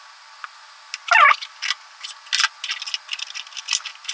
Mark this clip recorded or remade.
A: recorded